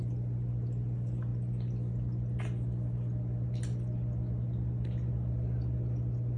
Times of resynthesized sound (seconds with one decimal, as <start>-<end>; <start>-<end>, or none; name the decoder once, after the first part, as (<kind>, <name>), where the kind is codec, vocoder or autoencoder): none